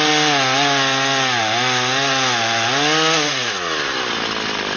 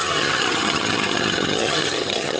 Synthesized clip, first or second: second